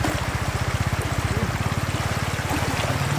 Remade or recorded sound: recorded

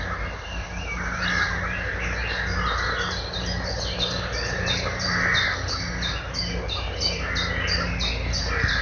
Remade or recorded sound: recorded